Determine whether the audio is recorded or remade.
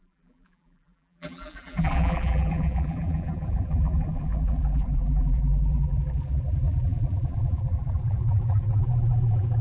remade